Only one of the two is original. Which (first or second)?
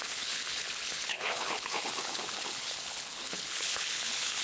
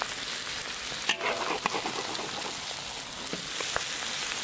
second